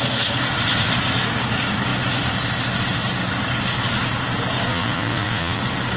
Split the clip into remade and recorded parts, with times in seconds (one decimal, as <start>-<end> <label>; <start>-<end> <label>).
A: 0.0-4.7 recorded; 4.7-5.6 remade; 5.6-6.0 recorded